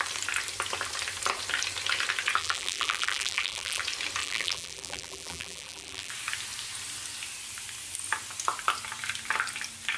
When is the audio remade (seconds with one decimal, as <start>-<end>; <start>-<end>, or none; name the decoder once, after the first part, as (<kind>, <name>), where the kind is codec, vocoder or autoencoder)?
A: 2.4-3.8 (vocoder, BigVGAN v2); 4.2-6.1